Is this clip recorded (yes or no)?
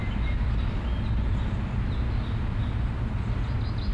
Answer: yes